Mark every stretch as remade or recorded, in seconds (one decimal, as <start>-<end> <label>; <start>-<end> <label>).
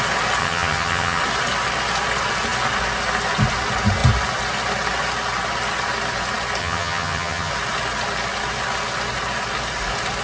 0.0-0.4 recorded; 0.4-1.2 remade; 1.2-6.6 recorded; 6.6-7.5 remade; 7.5-10.2 recorded